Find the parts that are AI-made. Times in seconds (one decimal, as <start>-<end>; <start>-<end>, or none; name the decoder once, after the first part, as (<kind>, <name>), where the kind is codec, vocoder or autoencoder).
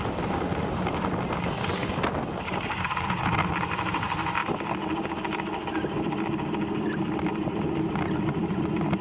none